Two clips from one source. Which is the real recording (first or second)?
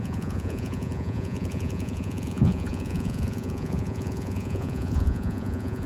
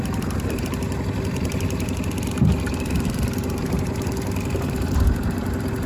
second